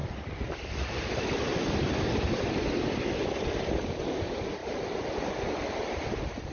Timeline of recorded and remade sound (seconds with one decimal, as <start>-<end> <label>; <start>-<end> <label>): 0.0-4.6 recorded; 4.6-5.3 remade; 5.3-6.5 recorded